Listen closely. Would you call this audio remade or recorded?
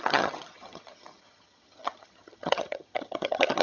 remade